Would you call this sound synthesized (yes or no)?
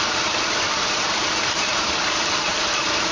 yes